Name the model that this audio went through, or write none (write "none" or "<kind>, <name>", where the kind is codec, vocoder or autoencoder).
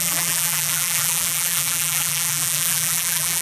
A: vocoder, BigVGAN v2